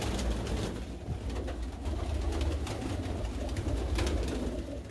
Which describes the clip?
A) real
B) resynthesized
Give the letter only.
A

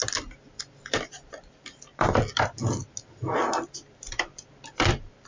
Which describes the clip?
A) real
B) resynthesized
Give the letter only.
A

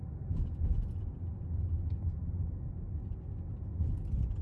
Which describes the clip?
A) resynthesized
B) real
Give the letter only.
B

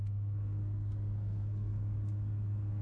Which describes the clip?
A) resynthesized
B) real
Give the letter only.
A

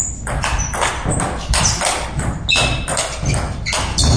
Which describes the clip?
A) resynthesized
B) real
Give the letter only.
B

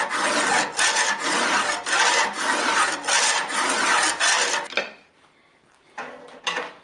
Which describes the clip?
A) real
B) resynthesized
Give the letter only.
A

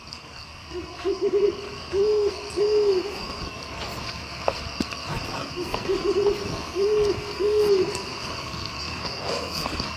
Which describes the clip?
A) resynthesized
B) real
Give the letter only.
A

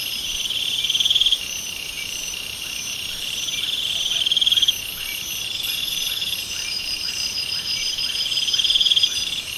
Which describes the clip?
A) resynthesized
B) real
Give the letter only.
A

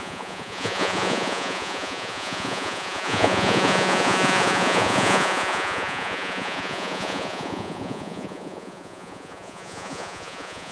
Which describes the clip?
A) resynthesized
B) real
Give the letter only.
A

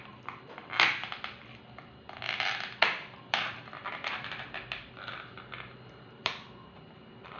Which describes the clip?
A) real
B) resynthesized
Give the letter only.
B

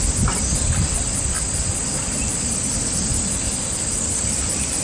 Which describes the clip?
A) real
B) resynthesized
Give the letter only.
A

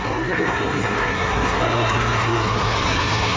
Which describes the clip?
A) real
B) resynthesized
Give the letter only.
B